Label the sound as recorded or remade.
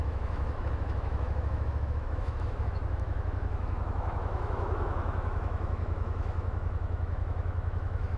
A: remade